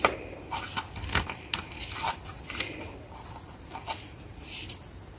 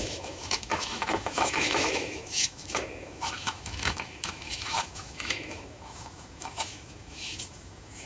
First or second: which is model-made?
second